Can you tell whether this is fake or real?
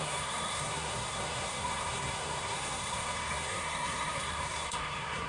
fake